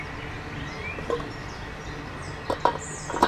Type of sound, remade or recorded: recorded